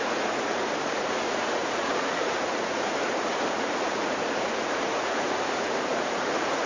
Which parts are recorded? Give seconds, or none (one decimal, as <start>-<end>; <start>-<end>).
none